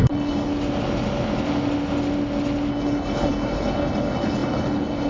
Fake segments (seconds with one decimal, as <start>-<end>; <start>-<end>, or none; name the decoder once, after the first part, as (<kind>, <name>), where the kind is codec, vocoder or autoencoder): 0.0-0.5 (codec, HILCodec); 2.7-5.1